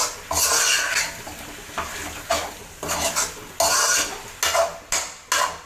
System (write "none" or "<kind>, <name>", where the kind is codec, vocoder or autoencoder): none